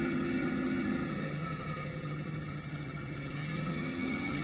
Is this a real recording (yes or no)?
no